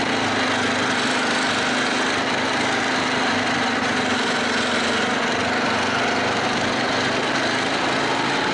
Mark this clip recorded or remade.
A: recorded